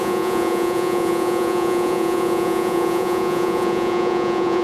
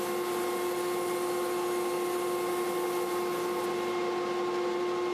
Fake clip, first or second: first